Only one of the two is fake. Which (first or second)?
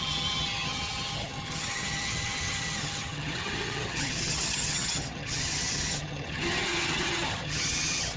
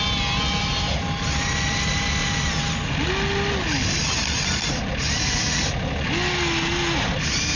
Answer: first